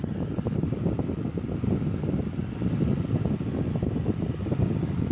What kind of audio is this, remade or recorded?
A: recorded